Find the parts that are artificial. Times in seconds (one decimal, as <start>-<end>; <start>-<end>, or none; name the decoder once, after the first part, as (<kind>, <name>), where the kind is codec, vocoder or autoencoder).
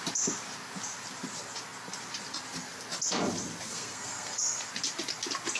3.7-4.7 (codec, SNAC)